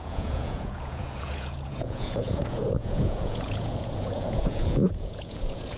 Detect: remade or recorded remade